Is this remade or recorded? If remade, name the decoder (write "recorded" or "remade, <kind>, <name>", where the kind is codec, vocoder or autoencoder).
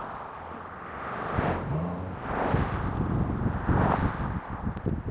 recorded